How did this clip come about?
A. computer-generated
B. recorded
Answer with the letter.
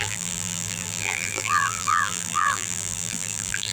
A